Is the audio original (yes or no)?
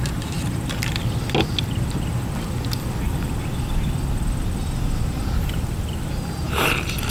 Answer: yes